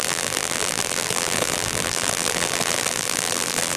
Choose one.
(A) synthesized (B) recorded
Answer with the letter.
A